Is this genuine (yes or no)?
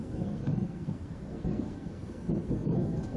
no